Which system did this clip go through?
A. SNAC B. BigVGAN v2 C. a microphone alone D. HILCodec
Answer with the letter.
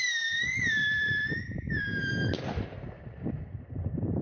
B